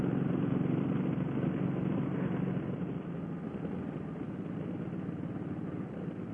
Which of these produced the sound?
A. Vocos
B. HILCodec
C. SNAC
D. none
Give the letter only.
D